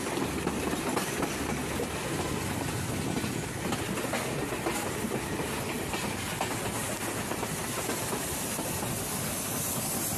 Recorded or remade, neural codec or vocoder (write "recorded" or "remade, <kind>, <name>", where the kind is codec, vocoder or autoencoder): recorded